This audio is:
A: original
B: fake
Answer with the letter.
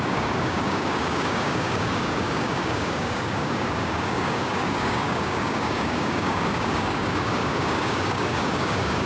B